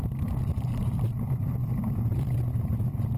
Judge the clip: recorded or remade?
remade